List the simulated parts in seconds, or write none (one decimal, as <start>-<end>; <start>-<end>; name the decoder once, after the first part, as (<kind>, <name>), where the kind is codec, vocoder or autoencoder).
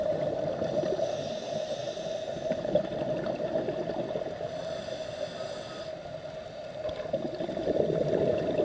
none